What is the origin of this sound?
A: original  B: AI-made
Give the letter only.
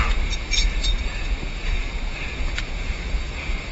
B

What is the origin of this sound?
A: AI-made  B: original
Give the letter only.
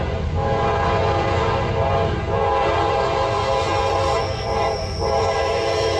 A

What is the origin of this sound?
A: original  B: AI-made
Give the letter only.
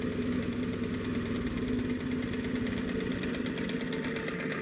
A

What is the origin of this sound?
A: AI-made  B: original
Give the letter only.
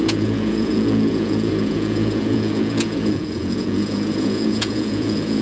A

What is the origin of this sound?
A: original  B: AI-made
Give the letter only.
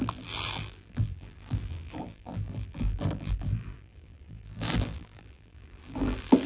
B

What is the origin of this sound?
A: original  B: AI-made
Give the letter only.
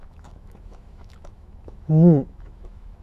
B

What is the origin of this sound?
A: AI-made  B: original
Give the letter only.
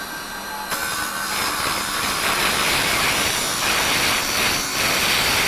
B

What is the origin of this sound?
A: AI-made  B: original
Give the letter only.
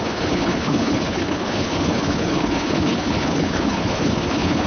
A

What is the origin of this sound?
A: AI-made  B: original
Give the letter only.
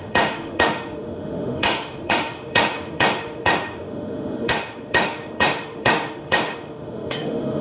A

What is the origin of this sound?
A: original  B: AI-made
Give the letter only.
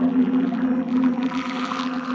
B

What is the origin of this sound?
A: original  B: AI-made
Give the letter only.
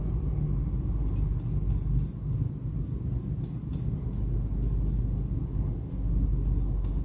A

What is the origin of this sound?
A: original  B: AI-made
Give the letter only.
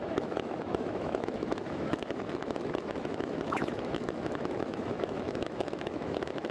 B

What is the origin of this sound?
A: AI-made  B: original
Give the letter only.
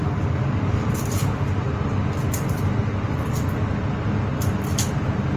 B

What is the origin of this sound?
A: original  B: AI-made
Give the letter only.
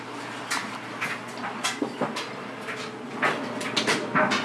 A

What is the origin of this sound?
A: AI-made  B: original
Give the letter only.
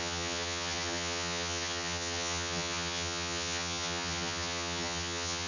A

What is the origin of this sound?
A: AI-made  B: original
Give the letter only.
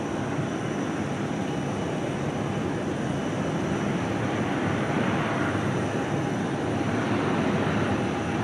B